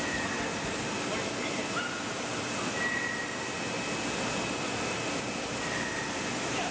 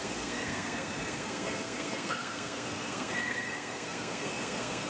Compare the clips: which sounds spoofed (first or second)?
second